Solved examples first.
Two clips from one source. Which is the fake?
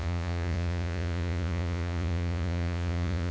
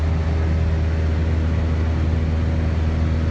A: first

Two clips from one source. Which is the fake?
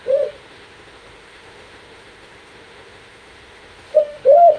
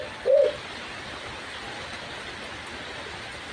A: first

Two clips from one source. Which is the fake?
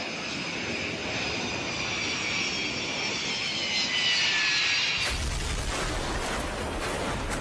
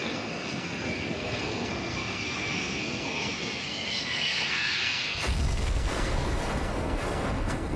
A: second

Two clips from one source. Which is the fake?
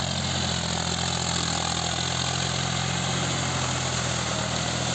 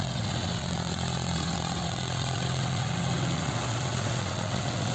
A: second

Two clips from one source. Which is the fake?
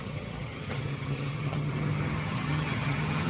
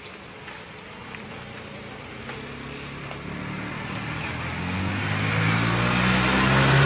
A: first